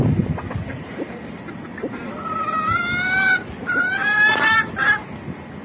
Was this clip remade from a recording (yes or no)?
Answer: no